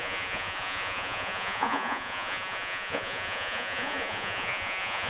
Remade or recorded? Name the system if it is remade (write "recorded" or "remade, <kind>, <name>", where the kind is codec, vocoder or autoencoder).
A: remade, vocoder, Vocos